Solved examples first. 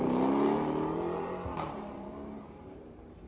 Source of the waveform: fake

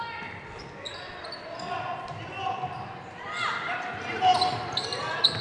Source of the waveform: real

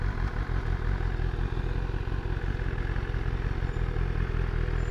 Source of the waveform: real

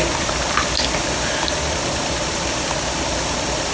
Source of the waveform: fake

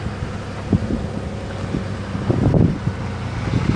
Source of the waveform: real